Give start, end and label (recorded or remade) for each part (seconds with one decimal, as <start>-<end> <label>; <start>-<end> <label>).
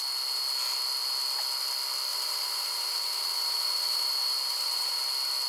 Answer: 0.0-2.1 recorded; 2.1-4.0 remade; 4.0-4.5 recorded; 4.5-5.0 remade; 5.0-5.5 recorded